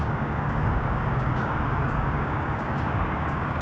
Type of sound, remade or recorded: remade